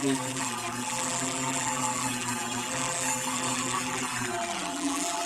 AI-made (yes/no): yes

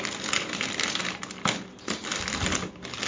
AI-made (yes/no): no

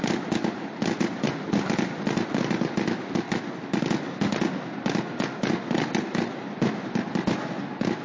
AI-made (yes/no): no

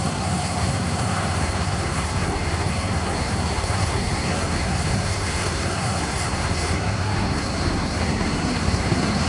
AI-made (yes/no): yes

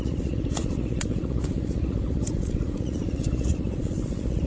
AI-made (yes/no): yes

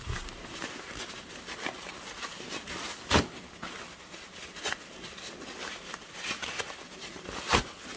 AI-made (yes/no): no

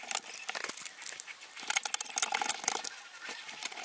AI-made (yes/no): no